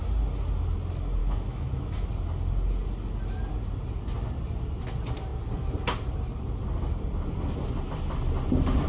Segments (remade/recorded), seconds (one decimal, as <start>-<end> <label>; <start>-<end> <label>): 0.0-1.2 recorded; 1.2-2.1 remade; 2.1-8.9 recorded